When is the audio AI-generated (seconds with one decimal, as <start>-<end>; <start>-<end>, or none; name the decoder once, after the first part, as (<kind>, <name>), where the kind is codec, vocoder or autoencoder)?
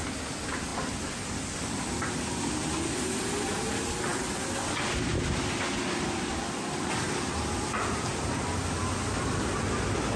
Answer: none